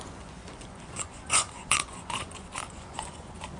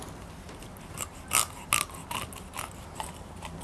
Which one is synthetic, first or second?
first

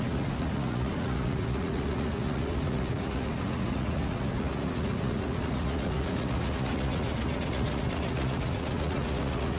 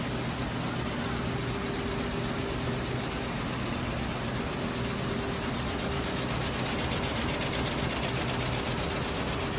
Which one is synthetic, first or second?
first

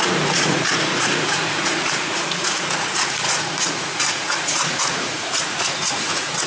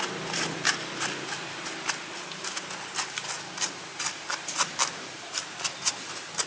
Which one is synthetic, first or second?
first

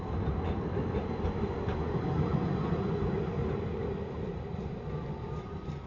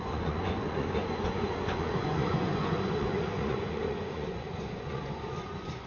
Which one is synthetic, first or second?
second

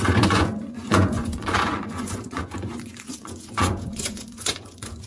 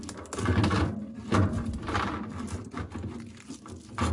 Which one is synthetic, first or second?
first